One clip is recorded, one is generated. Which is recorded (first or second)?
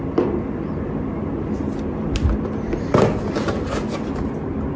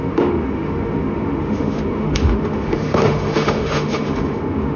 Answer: first